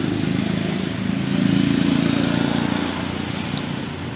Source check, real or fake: real